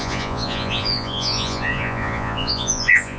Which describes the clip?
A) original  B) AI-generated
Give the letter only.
B